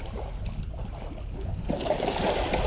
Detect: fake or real real